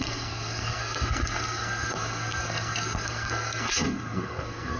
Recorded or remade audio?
remade